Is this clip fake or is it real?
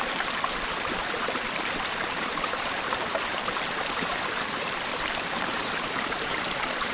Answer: fake